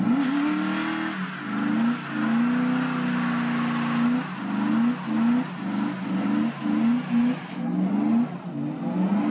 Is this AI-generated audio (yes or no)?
no